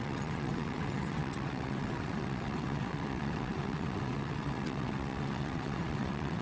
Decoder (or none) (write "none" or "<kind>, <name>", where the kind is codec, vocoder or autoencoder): vocoder, WaveNeXt